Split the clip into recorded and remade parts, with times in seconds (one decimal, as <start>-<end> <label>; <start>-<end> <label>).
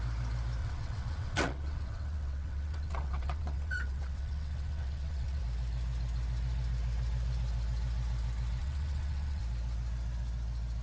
0.0-0.6 recorded; 0.6-5.4 remade; 5.4-8.6 recorded; 8.6-9.4 remade; 9.4-10.8 recorded